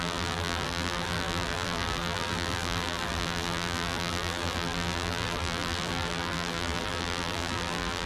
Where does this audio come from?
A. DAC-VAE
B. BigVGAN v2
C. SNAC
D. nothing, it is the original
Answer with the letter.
B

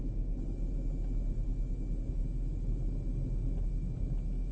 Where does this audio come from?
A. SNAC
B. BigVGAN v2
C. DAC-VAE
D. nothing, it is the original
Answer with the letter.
D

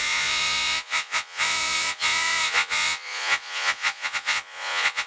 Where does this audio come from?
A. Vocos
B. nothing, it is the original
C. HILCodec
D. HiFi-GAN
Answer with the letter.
A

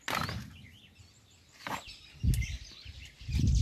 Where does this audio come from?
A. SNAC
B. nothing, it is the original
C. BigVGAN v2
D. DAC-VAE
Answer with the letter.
B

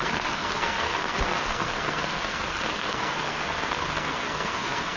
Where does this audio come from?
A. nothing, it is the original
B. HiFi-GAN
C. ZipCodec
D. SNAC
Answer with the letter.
D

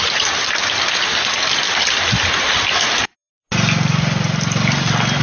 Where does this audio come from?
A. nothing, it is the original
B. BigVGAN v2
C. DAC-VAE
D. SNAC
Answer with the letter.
A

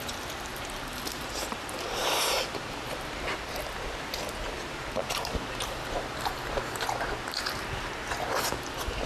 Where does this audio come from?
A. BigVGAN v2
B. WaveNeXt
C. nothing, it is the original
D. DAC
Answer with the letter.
A